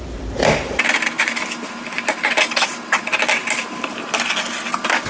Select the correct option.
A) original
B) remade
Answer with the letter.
A